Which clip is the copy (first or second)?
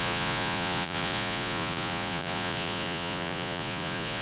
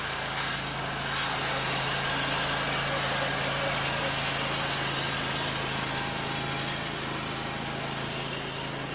first